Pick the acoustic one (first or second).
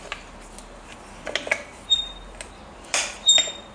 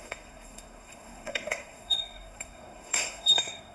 first